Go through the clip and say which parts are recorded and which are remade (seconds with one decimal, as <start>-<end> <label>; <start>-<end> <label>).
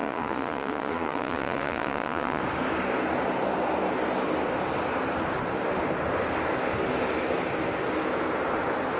0.0-2.4 remade; 2.4-9.0 recorded